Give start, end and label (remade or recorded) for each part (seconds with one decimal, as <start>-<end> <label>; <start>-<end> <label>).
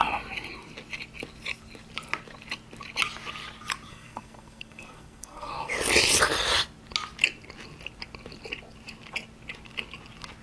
0.0-3.9 recorded; 3.9-5.7 remade; 5.7-10.4 recorded